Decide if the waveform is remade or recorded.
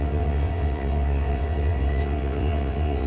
remade